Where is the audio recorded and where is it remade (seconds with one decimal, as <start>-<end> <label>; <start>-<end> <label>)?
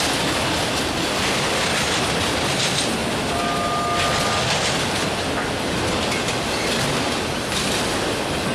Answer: 0.0-8.5 recorded